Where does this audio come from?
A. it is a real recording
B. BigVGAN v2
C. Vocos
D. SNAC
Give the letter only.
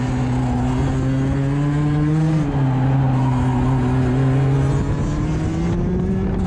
A